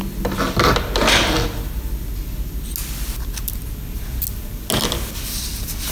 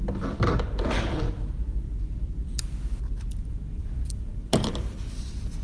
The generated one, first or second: second